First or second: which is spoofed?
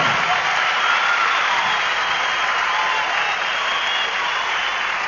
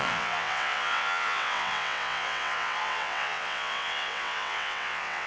second